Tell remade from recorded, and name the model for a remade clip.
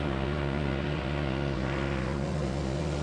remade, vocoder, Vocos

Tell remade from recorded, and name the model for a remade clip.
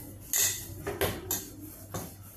recorded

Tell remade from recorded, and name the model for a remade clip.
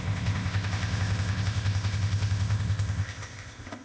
remade, codec, ZipCodec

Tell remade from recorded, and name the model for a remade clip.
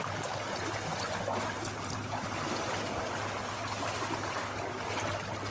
recorded